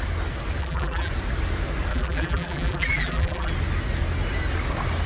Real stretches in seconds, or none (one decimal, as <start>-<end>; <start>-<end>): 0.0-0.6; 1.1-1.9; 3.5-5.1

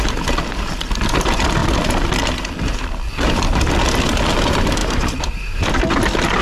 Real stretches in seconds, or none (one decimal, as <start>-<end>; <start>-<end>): 0.0-4.8; 5.7-6.4

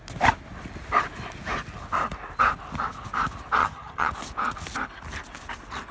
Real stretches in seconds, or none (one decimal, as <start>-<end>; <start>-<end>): 0.0-3.6; 4.1-5.9

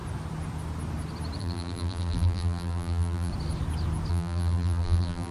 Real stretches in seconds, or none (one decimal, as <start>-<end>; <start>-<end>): 0.0-1.4; 3.3-4.1

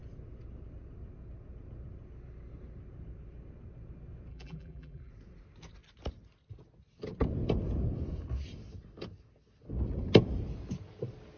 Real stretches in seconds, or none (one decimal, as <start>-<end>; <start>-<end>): 0.0-4.3; 5.1-11.4

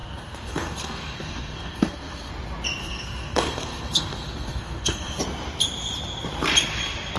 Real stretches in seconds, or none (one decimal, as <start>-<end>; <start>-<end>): 2.3-2.8; 5.2-7.2

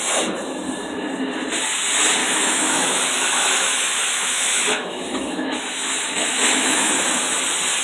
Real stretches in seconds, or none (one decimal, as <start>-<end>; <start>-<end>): 0.0-2.2; 6.9-7.8

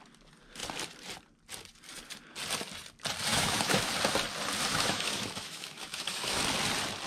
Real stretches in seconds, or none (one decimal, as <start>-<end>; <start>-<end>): 0.0-3.3; 3.9-4.7; 6.4-7.1